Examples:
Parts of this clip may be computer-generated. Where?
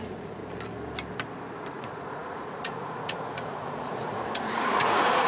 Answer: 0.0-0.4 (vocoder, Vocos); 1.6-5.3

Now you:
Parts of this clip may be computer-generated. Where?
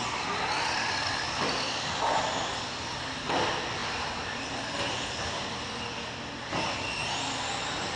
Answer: none